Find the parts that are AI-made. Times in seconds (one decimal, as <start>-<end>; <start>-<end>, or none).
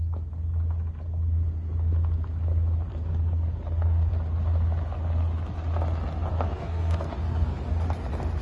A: 2.9-4.1; 6.3-7.7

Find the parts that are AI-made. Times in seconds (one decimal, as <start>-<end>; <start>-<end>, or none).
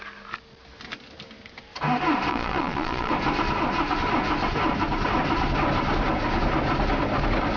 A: 2.3-3.1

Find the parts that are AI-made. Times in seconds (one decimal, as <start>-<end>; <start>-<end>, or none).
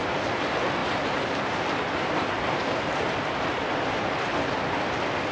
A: 0.0-4.6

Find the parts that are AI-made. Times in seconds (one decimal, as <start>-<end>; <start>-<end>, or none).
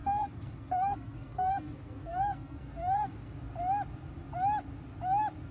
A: 0.0-3.3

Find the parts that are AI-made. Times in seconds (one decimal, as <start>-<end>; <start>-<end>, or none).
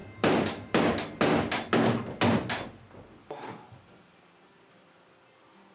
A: 0.0-0.8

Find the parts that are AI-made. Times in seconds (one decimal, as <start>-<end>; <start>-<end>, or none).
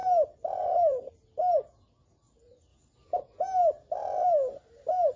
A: 0.0-1.1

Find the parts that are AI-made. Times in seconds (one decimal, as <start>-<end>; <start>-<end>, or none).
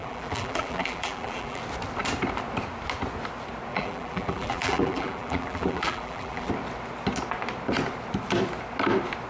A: 0.0-1.6; 3.7-6.5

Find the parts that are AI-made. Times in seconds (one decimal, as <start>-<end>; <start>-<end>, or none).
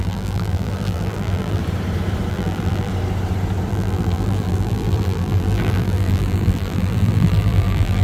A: 0.0-1.6; 2.3-2.9; 3.7-8.0